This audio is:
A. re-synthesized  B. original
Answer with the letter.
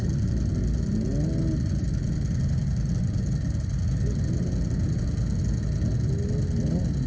B